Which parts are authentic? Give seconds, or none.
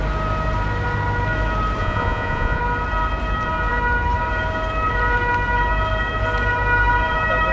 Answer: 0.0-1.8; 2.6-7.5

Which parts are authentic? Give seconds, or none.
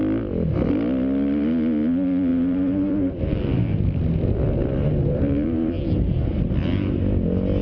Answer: 0.0-2.3; 3.2-4.6; 5.7-7.6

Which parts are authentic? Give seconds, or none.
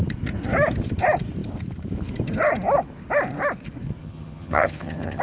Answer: 0.0-4.0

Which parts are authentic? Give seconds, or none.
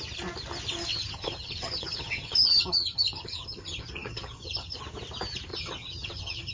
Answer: 0.0-0.9; 4.8-5.5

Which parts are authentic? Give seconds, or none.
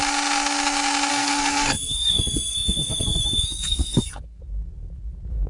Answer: 0.0-1.1; 4.4-5.5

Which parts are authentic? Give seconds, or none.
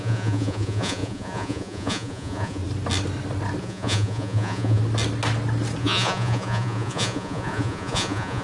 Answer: 2.6-3.6; 4.8-5.8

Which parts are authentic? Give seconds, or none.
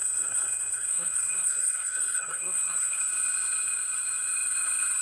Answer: 3.0-5.0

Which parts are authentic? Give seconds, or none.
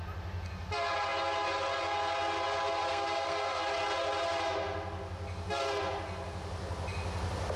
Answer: 0.0-2.9; 3.6-7.6